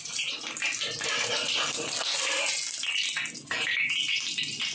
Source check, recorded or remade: recorded